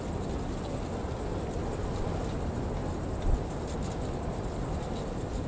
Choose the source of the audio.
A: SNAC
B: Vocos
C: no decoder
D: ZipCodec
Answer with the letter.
C